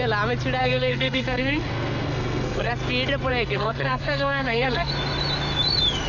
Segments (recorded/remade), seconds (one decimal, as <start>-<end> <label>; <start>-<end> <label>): 0.0-0.6 recorded; 0.6-2.7 remade; 2.7-3.3 recorded; 3.3-4.9 remade; 4.9-6.1 recorded